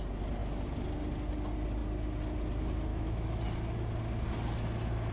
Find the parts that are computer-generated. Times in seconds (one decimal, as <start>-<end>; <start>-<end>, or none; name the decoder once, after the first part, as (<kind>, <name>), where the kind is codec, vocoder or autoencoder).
2.9-3.4 (autoencoder, DAC-VAE)